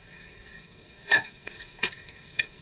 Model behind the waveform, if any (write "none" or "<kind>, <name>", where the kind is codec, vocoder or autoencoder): codec, SNAC